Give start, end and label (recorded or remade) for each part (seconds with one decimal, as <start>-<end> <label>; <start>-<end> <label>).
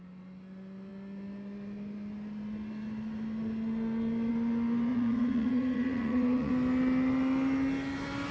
0.0-4.9 recorded; 4.9-6.5 remade; 6.5-8.3 recorded